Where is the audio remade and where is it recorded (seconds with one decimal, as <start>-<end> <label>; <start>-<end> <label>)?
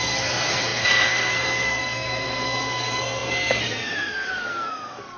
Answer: 0.0-5.2 remade